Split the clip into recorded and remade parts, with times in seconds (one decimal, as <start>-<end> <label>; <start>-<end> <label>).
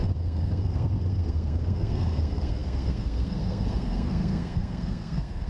0.0-5.5 remade